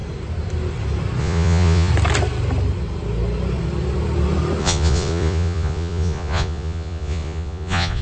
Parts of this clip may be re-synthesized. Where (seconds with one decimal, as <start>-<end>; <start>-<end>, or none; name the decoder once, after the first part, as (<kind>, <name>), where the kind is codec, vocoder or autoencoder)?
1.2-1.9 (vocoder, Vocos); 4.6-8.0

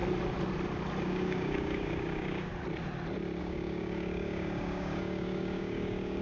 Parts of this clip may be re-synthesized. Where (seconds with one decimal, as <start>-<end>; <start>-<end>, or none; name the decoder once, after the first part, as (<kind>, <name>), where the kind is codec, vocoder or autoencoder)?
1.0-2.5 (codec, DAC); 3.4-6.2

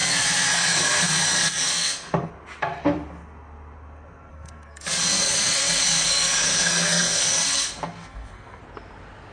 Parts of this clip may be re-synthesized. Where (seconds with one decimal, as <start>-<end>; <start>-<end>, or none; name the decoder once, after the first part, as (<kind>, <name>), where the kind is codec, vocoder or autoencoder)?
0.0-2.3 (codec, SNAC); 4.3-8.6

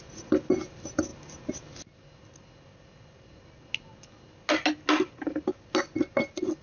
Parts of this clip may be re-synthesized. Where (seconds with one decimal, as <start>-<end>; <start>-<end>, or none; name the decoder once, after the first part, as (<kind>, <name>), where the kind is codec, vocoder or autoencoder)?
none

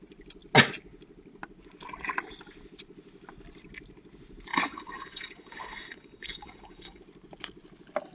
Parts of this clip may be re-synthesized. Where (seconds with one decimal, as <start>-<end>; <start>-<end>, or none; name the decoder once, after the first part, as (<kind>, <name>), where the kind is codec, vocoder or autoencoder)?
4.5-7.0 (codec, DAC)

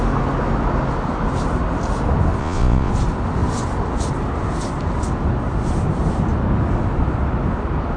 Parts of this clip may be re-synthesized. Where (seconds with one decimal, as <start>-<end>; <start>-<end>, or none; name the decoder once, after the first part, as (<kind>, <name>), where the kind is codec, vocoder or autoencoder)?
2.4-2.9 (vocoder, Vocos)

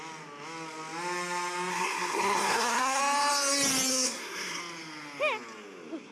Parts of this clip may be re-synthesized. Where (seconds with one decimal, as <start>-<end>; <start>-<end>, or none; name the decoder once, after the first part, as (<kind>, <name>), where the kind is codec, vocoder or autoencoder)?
1.7-3.0 (codec, SNAC); 3.9-4.6

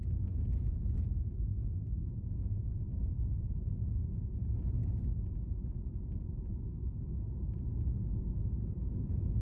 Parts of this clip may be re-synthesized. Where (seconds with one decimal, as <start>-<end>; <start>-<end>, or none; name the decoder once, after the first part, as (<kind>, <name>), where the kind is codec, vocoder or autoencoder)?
0.0-1.5 (vocoder, Vocos); 2.1-4.8; 8.2-9.4